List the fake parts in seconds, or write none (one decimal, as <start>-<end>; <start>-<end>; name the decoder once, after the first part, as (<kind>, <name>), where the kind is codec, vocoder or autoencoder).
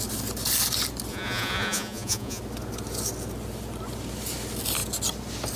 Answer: 1.1-2.4 (vocoder, Vocos)